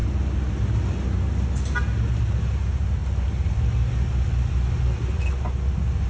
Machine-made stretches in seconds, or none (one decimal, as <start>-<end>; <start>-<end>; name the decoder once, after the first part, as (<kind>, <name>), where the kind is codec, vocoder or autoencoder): none